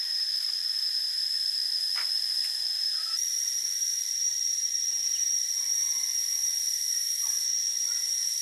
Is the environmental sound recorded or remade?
remade